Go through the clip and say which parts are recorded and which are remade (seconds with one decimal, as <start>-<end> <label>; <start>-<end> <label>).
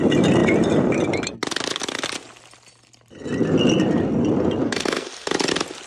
0.0-4.6 recorded; 4.6-5.3 remade; 5.3-5.9 recorded